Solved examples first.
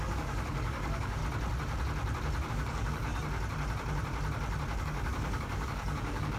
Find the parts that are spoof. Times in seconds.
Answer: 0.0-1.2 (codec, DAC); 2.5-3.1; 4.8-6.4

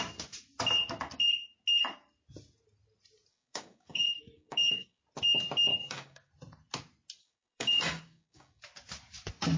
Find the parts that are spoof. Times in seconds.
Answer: 3.3-5.0 (codec, DAC); 5.7-6.3; 7.2-8.6

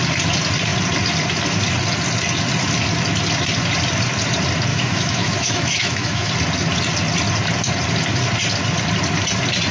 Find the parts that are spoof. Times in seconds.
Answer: 4.7-6.3 (autoencoder, DAC-VAE)

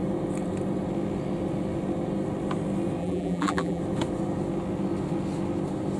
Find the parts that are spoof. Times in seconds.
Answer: 3.0-3.8 (vocoder, BigVGAN v2)

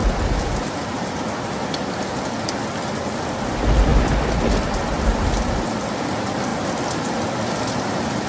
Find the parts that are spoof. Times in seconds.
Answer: none